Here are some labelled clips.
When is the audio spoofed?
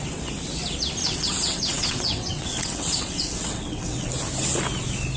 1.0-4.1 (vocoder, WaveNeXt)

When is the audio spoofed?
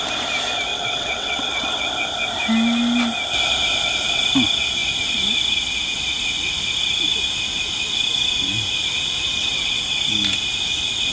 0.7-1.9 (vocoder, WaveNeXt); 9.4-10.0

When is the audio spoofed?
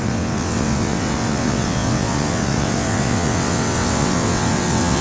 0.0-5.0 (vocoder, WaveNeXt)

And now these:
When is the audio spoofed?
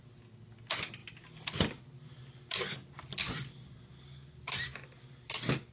none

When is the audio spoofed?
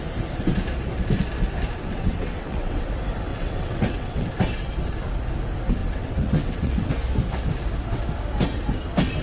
1.8-2.9 (vocoder, WaveNeXt); 3.3-4.3; 5.8-6.9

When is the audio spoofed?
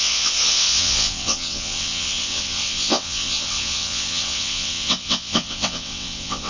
0.0-6.5 (vocoder, WaveNeXt)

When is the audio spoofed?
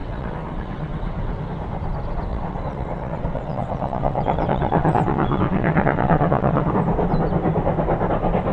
0.0-1.4 (vocoder, WaveNeXt); 2.3-6.7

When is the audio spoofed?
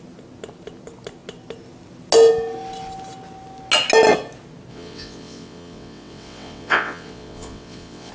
4.7-8.1 (vocoder, WaveNeXt)